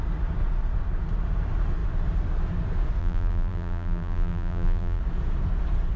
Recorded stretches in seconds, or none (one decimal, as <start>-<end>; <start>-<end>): 0.0-3.0; 5.0-6.0